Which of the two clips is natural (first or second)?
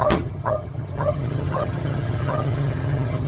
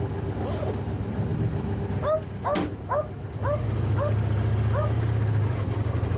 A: second